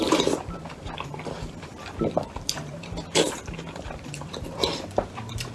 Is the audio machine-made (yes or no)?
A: yes